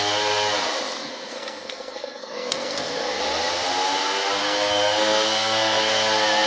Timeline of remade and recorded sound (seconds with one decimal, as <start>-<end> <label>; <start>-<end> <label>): 0.0-1.0 recorded; 1.0-3.2 remade; 3.2-4.4 recorded; 4.4-5.9 remade; 5.9-6.5 recorded